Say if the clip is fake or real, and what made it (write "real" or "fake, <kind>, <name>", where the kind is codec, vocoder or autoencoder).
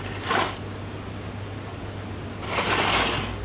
real